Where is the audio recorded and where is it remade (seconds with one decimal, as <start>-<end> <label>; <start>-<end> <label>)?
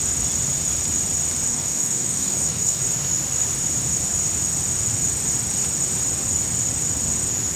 0.0-1.5 recorded; 1.5-2.8 remade; 2.8-7.6 recorded